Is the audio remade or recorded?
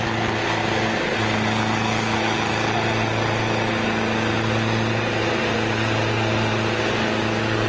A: recorded